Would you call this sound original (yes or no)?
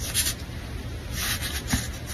yes